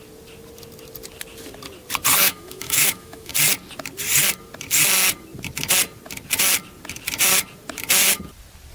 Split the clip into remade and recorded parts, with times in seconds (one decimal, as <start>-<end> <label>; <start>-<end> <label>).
0.0-2.2 recorded; 2.2-3.3 remade; 3.3-8.7 recorded